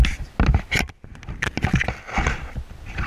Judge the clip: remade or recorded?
recorded